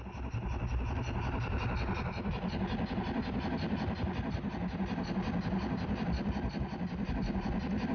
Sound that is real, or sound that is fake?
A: real